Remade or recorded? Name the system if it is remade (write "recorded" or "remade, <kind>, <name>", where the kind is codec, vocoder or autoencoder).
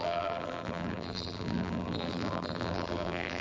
remade, vocoder, BigVGAN v2